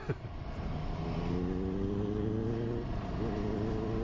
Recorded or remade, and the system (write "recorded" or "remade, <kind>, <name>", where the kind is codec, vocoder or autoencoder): recorded